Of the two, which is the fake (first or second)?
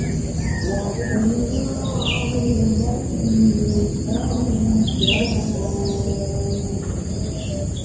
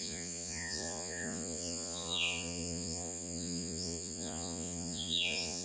second